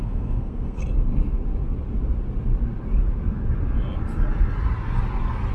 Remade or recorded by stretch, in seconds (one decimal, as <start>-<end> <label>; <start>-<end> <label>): 0.0-0.8 remade; 0.8-5.5 recorded